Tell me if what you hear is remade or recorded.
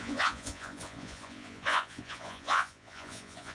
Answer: remade